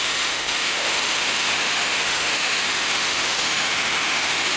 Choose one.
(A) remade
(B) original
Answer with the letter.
A